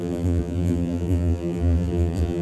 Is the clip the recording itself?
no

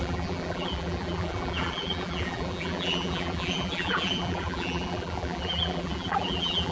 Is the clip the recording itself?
no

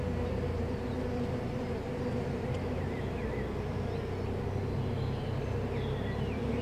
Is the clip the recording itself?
yes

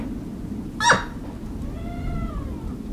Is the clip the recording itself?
yes